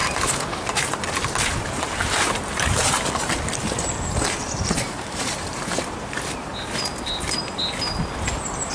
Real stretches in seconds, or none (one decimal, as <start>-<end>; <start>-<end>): 3.1-4.4; 6.5-8.7